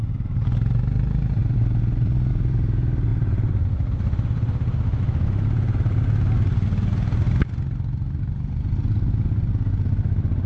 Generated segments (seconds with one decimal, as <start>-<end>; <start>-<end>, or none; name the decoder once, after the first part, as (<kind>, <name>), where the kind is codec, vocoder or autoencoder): 3.1-5.0 (vocoder, BigVGAN v2)